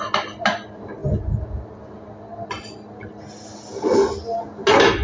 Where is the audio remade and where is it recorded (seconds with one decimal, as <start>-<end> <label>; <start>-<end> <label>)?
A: 0.0-5.0 recorded